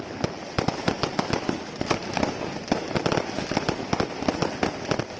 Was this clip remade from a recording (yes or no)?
no